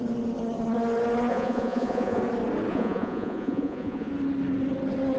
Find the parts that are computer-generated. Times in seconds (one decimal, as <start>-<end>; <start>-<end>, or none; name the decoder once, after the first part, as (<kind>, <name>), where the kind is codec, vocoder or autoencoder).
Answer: 1.3-2.2 (vocoder, Vocos); 2.7-4.1